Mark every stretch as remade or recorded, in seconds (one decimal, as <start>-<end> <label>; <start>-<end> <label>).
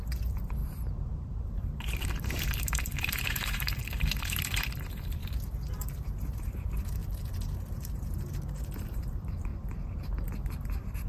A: 0.0-5.2 remade; 5.2-6.4 recorded; 6.4-7.0 remade; 7.0-7.7 recorded; 7.7-9.5 remade; 9.5-10.2 recorded; 10.2-11.1 remade